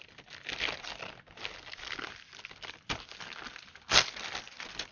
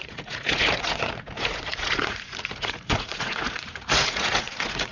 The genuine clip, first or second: first